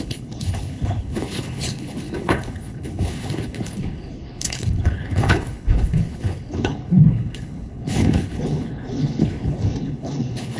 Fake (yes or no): yes